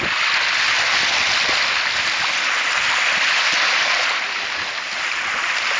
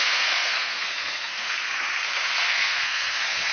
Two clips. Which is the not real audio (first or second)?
second